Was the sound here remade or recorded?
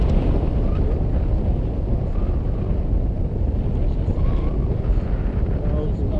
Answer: recorded